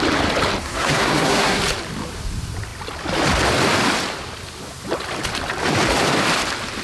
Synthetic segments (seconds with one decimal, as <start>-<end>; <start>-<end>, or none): 0.6-1.6